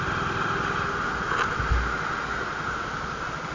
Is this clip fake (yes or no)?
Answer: no